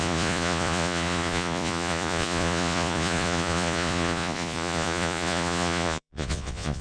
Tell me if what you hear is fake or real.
fake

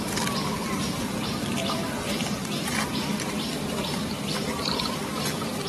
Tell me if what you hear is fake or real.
real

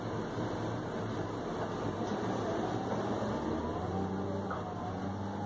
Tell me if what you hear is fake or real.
real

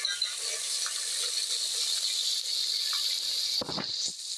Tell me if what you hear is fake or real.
real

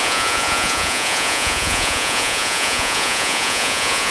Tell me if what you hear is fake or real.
fake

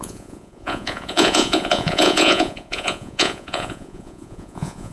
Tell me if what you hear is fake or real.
fake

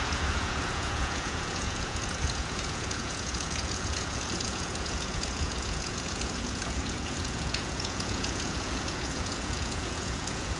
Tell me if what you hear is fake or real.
fake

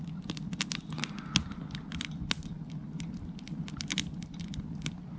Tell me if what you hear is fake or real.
real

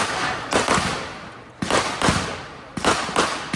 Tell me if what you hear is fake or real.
real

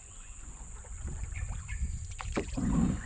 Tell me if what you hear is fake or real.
fake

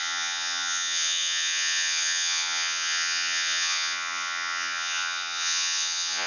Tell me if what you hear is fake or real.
fake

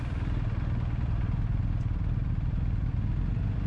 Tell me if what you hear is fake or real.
real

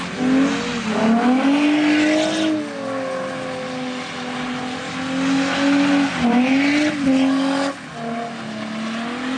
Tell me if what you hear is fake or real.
real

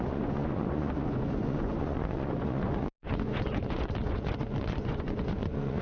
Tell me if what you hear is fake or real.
fake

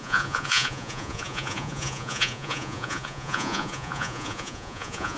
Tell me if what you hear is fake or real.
fake